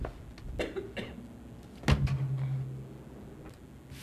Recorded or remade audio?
recorded